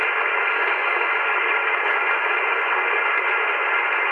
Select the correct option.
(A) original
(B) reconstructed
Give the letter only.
B